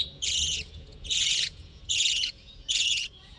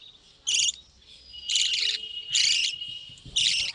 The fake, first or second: first